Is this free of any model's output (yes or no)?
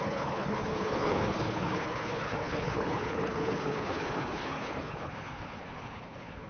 no